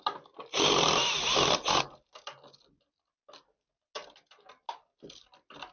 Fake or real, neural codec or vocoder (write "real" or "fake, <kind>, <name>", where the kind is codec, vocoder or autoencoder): real